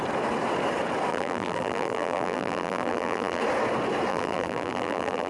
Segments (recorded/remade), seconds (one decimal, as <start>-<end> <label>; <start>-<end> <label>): 0.0-1.1 recorded; 1.1-3.4 remade; 3.4-4.1 recorded; 4.1-5.3 remade